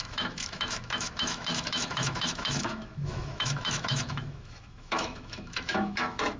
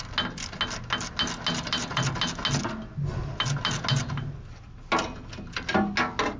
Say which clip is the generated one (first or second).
first